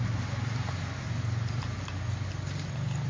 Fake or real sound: real